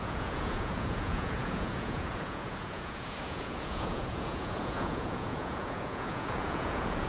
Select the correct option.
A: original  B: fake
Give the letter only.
B